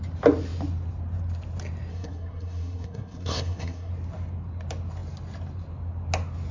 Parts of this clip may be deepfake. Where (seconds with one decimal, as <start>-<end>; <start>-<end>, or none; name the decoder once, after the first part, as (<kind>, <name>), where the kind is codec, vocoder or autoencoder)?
1.9-3.9 (codec, SNAC)